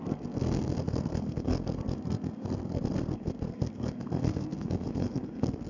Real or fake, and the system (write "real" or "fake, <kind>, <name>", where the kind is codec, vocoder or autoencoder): fake, codec, SNAC